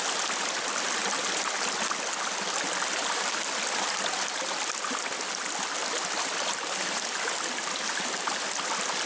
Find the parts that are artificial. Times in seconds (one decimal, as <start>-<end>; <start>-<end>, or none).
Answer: none